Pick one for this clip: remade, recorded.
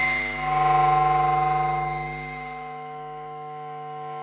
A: remade